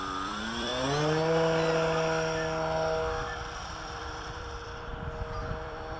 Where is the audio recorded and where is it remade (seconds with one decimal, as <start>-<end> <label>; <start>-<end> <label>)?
0.0-0.7 remade; 0.7-3.7 recorded; 3.7-4.9 remade; 4.9-5.4 recorded; 5.4-6.0 remade